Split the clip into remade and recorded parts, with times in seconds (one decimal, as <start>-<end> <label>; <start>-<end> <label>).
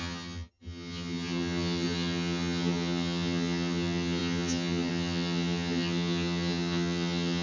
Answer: 0.0-7.4 remade